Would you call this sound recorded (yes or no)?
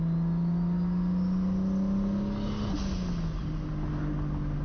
yes